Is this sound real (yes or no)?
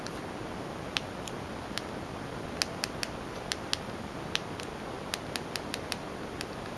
yes